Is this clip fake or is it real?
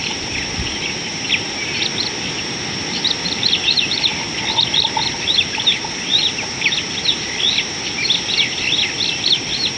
real